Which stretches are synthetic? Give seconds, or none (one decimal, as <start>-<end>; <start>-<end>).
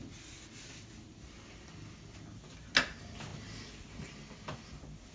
none